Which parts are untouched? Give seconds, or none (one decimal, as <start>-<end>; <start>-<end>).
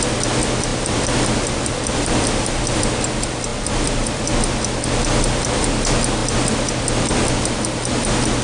0.0-0.7; 2.8-3.5; 4.3-8.4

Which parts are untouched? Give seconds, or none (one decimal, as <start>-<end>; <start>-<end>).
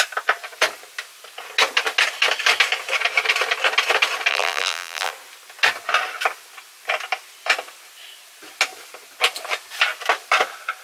0.0-4.3; 5.1-10.8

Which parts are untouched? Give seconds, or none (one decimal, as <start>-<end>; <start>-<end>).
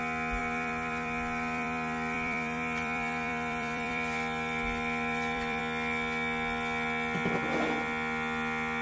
0.0-0.4; 5.6-8.8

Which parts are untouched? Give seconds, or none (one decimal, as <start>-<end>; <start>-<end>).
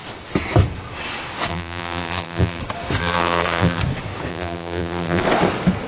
0.0-1.5; 2.6-3.0; 3.8-4.3; 5.2-5.9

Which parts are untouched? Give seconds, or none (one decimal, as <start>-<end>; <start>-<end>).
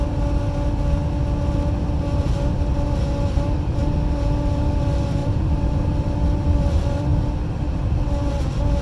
0.0-5.2; 5.9-8.8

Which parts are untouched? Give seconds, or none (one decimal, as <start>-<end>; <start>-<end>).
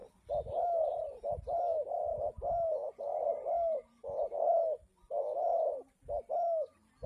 1.9-7.1